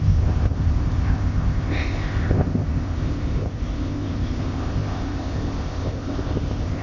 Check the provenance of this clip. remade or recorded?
remade